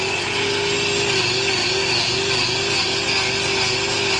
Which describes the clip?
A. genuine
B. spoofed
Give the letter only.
A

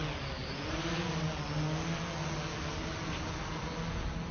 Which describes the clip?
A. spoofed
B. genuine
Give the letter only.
B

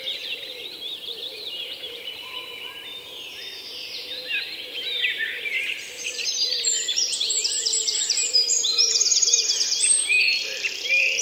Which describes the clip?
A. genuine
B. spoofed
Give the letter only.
B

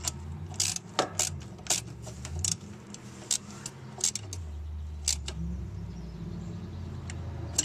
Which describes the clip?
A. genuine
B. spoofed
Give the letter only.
A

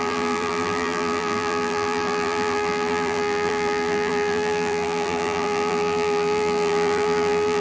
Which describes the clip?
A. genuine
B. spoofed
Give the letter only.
B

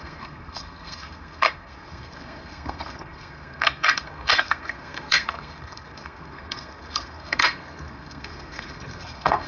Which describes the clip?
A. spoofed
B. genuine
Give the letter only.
A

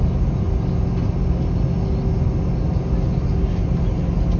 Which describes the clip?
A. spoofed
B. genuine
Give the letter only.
B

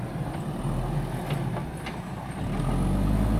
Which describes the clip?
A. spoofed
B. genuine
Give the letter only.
B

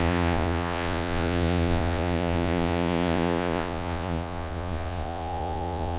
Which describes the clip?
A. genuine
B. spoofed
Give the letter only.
B